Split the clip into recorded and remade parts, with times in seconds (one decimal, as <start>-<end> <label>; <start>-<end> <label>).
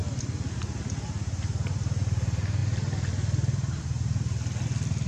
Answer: 0.0-5.1 recorded